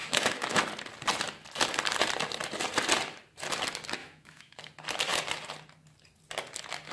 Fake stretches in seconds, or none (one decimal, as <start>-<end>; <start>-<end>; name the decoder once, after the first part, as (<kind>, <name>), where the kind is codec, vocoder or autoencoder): 0.0-0.6 (autoencoder, DAC-VAE); 4.0-4.6